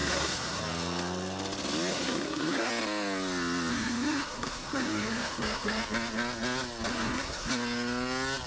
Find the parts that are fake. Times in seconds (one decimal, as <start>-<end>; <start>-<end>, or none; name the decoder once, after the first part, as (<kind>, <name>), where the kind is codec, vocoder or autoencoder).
0.0-0.6 (codec, SNAC); 1.9-2.7; 3.7-5.8; 6.9-7.5